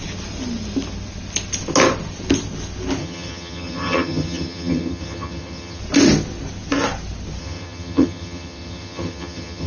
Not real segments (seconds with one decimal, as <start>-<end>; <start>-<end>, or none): 3.0-5.8; 7.4-9.7